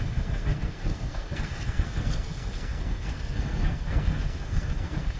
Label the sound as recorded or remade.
remade